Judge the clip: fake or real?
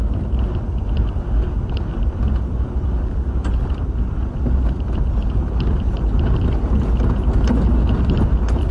fake